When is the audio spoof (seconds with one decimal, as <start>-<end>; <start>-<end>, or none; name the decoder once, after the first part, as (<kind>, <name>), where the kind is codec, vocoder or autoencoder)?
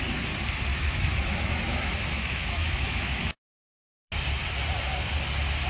0.7-4.1 (autoencoder, DAC-VAE)